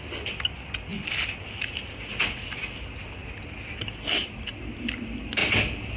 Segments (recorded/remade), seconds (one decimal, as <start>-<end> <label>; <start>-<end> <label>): 0.0-6.0 recorded